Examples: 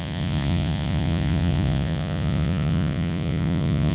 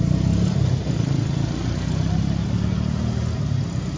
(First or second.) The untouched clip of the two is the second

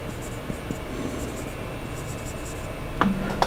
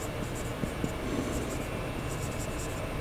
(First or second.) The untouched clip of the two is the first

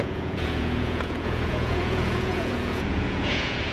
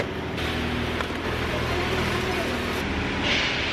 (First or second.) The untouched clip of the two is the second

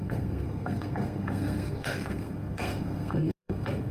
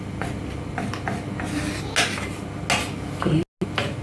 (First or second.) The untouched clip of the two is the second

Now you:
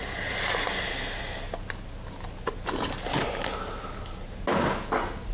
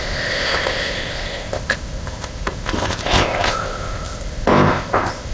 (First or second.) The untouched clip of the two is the first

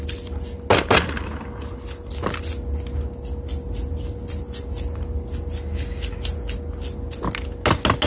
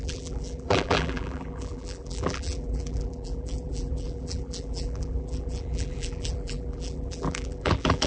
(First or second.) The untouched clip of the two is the first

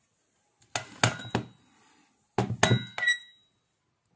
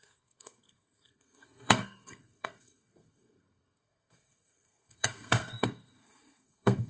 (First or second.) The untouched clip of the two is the first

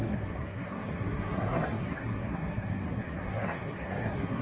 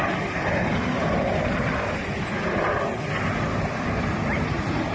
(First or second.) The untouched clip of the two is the second